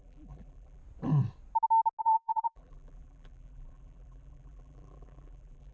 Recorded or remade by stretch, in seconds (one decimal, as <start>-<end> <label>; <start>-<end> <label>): 0.0-0.8 remade; 0.8-2.0 recorded; 2.0-5.7 remade